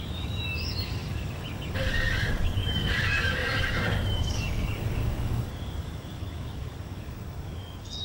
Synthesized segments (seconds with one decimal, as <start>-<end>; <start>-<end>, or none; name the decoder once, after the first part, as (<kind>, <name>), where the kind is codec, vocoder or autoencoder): 0.0-8.0 (codec, DAC)